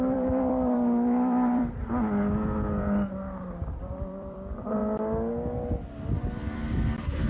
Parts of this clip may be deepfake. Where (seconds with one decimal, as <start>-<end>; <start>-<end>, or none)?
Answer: 0.0-1.6; 3.8-4.8; 6.1-7.3